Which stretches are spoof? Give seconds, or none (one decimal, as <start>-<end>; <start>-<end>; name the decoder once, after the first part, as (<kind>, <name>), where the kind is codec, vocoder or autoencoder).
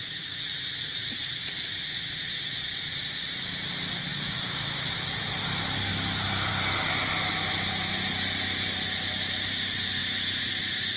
1.0-2.4 (vocoder, BigVGAN v2); 4.1-5.9; 6.5-7.3; 10.0-10.5